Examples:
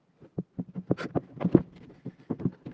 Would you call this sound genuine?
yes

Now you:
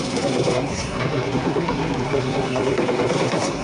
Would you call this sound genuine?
no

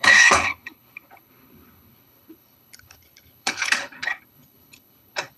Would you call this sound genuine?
no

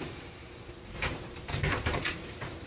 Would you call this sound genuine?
no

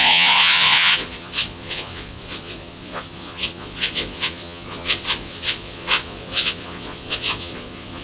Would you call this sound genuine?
no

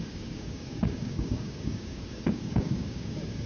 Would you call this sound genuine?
no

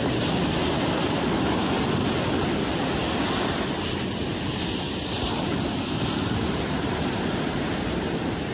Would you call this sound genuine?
yes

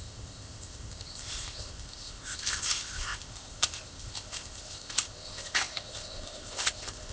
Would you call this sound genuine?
no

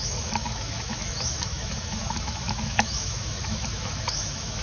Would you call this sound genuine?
no